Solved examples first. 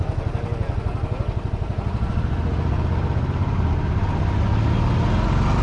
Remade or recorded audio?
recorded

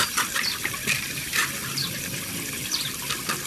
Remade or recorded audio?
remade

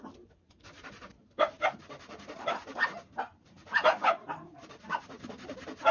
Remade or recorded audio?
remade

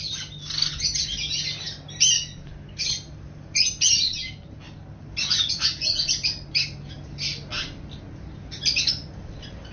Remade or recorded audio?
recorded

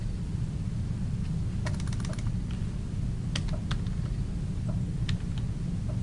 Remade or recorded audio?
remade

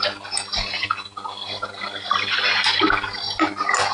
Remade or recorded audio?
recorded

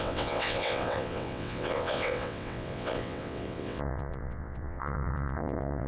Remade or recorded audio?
remade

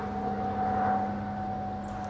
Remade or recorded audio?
recorded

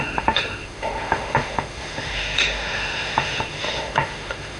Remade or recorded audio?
remade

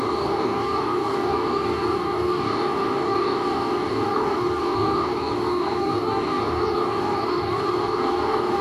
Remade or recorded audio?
remade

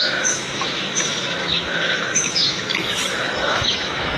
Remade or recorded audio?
remade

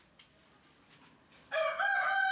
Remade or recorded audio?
recorded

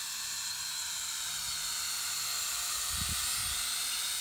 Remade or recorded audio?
recorded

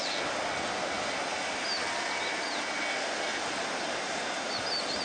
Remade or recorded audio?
recorded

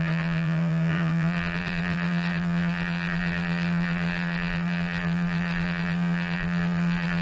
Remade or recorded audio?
remade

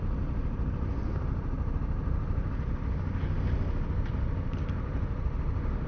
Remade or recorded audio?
recorded